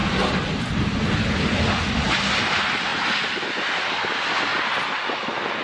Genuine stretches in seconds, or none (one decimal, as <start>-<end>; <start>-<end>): 0.0-5.6